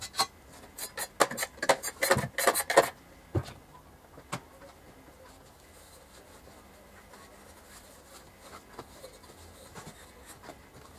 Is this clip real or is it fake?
real